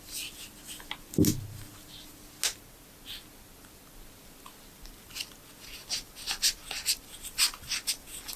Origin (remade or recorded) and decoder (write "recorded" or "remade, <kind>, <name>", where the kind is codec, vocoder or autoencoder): recorded